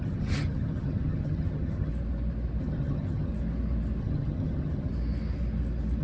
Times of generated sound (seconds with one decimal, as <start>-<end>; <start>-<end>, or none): 0.0-1.9; 2.6-3.3; 4.0-4.9